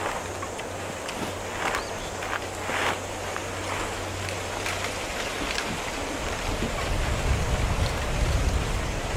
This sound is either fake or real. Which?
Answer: real